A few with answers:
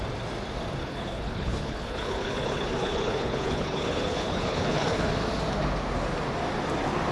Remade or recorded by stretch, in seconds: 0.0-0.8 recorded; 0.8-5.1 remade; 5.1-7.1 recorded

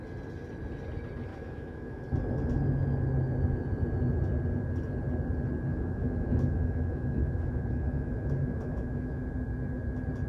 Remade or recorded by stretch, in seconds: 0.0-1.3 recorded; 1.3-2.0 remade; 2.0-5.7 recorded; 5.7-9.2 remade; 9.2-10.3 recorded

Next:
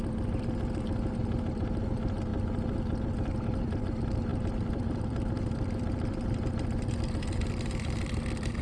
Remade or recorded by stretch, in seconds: 0.0-4.3 recorded; 4.3-8.6 remade

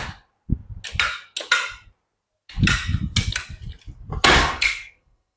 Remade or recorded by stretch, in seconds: 0.0-4.4 recorded; 4.4-5.4 remade

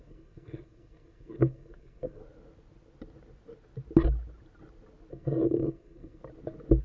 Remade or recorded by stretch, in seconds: 0.0-2.2 remade; 2.2-5.1 recorded; 5.1-6.2 remade; 6.2-6.8 recorded